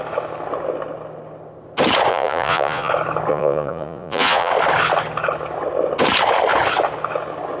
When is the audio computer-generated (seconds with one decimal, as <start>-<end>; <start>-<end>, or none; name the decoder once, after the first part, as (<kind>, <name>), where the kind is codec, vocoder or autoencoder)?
2.1-2.9 (vocoder, Vocos); 3.3-4.5